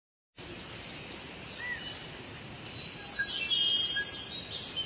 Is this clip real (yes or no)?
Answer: yes